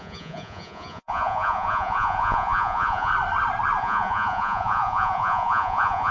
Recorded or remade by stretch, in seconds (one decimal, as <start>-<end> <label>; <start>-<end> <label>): 0.0-3.1 remade; 3.1-3.8 recorded; 3.8-6.1 remade